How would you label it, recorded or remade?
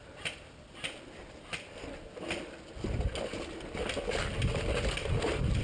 recorded